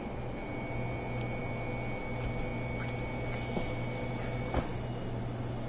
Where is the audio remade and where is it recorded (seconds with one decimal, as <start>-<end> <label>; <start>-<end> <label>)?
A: 0.0-5.7 recorded